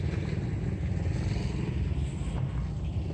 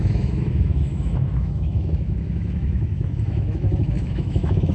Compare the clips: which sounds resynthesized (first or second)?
second